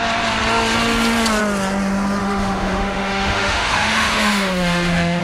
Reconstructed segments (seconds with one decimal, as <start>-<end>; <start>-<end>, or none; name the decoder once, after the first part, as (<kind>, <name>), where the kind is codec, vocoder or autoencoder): 2.2-5.2 (autoencoder, DAC-VAE)